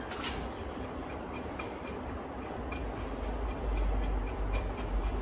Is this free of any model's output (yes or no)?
yes